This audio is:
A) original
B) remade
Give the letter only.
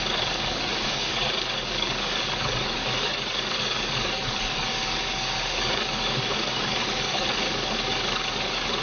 B